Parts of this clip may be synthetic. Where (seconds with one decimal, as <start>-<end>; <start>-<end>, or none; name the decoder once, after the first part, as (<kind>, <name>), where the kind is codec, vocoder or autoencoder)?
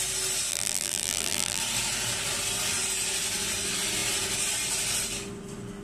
0.5-1.6 (vocoder, BigVGAN v2)